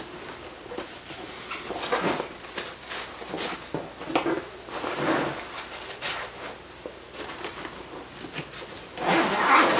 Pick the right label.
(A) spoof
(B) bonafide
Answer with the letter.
B